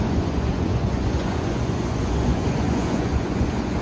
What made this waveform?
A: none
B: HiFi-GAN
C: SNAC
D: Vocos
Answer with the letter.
D